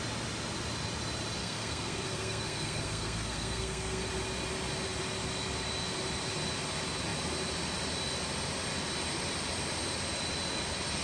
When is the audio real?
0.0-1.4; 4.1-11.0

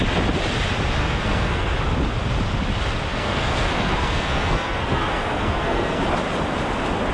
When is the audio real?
0.0-1.0; 1.8-3.1; 6.0-7.1

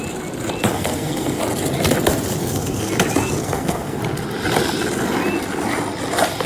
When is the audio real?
0.0-0.7; 1.4-2.4; 2.9-3.4; 4.0-6.5

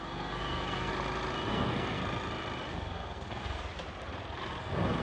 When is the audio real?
0.9-1.5; 2.0-2.7; 3.6-4.6